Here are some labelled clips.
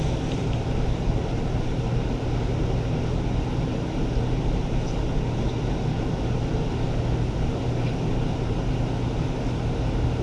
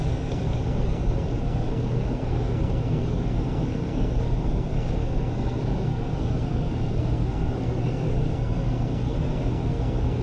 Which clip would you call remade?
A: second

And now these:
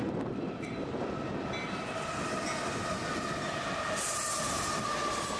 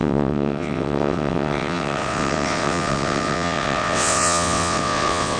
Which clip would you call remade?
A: second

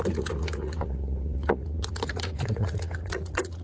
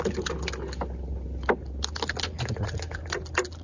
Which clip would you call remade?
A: first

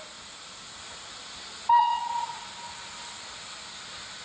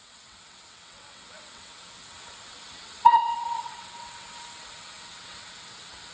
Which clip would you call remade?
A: second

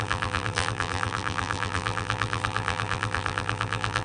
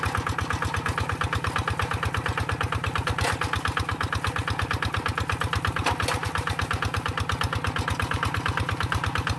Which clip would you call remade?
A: first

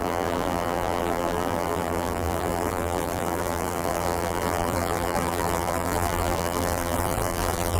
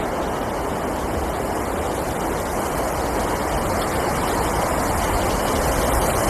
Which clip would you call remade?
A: first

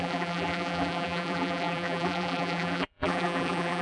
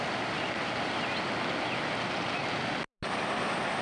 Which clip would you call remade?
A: first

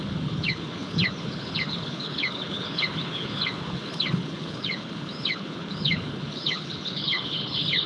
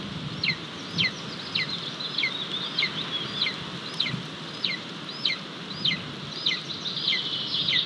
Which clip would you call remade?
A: first